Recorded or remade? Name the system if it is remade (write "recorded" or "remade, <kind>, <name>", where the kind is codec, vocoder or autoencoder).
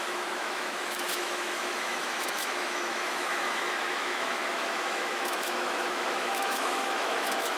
remade, autoencoder, DAC-VAE